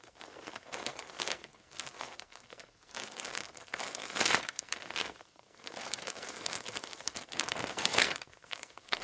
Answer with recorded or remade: remade